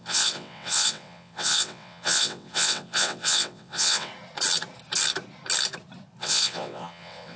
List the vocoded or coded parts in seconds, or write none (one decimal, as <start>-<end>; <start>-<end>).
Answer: 0.0-4.1; 6.2-7.4